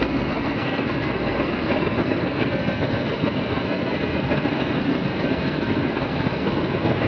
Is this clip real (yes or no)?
no